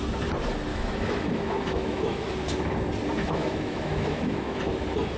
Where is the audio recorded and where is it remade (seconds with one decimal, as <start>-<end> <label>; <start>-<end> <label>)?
0.0-0.7 recorded; 0.7-2.3 remade; 2.3-3.2 recorded; 3.2-4.6 remade; 4.6-5.2 recorded